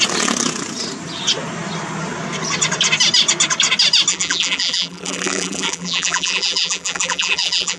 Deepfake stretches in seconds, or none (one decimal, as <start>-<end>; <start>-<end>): 4.1-7.8

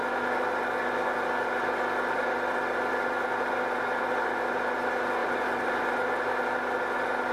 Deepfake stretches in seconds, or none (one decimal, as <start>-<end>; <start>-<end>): 5.2-5.8

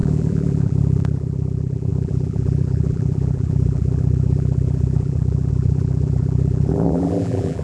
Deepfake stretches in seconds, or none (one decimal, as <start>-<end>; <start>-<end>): 0.0-7.6

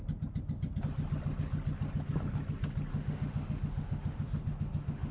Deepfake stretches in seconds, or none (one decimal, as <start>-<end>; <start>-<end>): 2.9-5.1